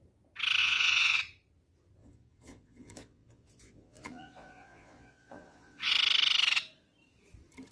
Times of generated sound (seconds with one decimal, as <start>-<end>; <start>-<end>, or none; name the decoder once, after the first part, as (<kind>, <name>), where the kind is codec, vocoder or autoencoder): 0.6-1.2 (vocoder, Vocos); 2.0-5.9

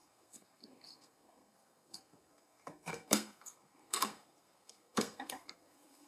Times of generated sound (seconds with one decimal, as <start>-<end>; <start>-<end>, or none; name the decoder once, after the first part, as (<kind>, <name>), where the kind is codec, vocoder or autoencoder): 0.0-6.1 (codec, SNAC)